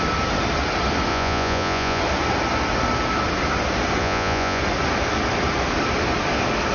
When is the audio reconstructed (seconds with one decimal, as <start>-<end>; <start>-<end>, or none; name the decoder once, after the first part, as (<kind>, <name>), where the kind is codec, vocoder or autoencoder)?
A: 1.1-2.0 (vocoder, Vocos); 4.0-4.6